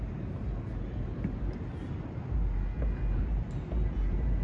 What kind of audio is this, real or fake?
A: real